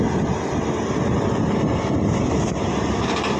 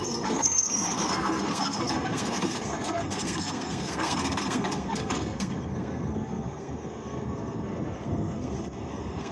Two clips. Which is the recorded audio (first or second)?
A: first